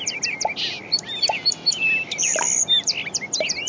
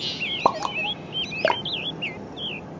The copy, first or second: first